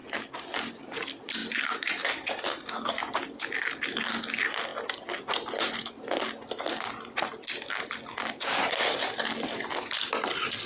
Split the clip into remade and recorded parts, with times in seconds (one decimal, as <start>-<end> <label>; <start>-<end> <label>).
0.0-10.7 recorded